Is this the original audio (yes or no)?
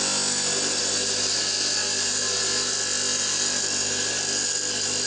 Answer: yes